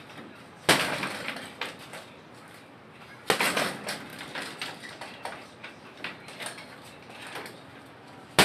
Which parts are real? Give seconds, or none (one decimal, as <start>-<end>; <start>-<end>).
0.0-4.1; 5.2-8.4